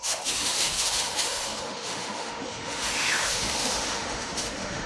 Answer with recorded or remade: remade